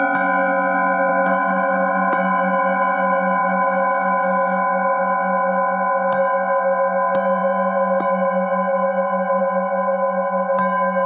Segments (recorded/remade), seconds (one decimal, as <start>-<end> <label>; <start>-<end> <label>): 0.0-1.1 recorded; 1.1-1.9 remade; 1.9-3.4 recorded; 3.4-5.0 remade; 5.0-11.1 recorded

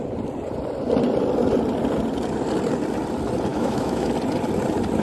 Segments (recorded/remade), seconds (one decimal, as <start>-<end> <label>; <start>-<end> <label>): 0.0-3.5 recorded; 3.5-4.1 remade; 4.1-5.0 recorded

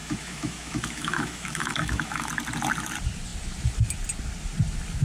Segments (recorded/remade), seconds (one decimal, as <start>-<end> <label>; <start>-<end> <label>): 0.0-2.3 remade; 2.3-5.0 recorded

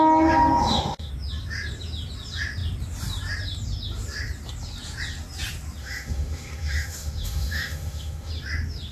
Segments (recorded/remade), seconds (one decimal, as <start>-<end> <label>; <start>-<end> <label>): 0.0-0.6 recorded; 0.6-1.1 remade; 1.1-5.8 recorded; 5.8-8.3 remade; 8.3-8.9 recorded